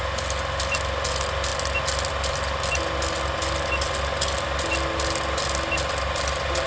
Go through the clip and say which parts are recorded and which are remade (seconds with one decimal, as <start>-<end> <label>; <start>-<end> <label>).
0.0-6.7 recorded